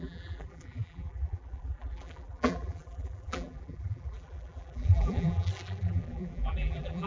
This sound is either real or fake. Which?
fake